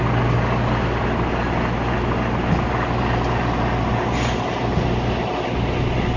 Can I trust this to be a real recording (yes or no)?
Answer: yes